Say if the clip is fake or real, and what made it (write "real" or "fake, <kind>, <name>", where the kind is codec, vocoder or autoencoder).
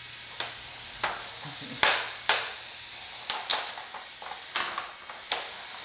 real